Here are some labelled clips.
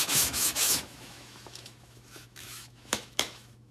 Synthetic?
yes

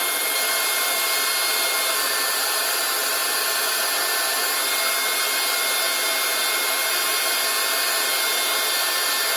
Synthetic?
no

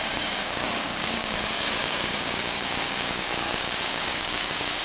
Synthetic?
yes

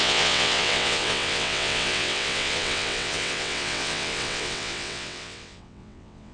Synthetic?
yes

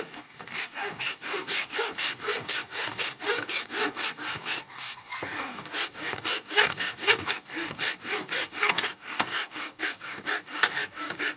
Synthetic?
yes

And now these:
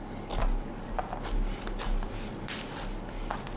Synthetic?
no